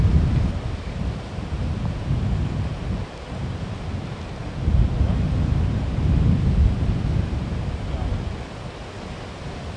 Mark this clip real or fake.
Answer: real